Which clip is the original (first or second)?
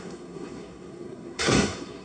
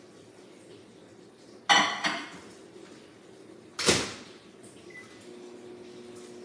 second